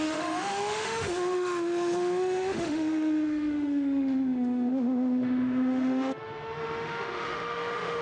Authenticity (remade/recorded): remade